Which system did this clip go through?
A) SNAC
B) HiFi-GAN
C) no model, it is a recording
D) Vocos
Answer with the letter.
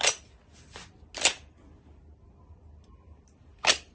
C